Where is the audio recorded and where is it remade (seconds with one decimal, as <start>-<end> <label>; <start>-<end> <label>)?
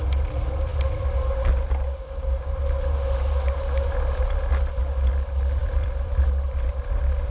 0.0-5.6 recorded; 5.6-6.2 remade; 6.2-7.3 recorded